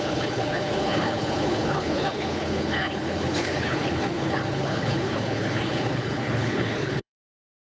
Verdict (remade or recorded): remade